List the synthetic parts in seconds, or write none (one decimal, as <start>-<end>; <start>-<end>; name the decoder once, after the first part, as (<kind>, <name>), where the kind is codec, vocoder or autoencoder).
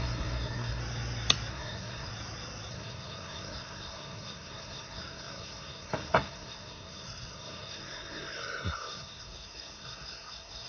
0.0-0.8 (codec, SNAC); 1.5-2.1; 2.7-10.7